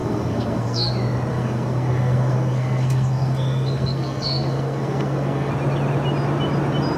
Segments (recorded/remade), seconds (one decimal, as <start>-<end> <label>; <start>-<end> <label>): 0.0-0.9 remade; 0.9-1.3 recorded; 1.3-5.5 remade; 5.5-7.0 recorded